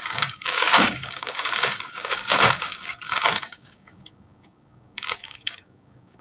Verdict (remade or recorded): remade